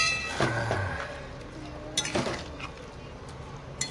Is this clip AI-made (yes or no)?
no